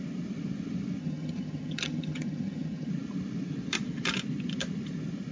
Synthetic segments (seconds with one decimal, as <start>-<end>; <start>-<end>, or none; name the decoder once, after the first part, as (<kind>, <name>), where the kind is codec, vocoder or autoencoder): 1.0-2.9 (vocoder, HiFi-GAN)